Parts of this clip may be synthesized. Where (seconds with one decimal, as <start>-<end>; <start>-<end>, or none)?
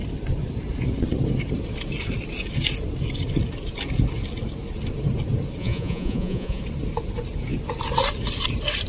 5.6-6.6